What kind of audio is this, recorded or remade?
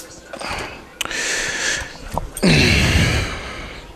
recorded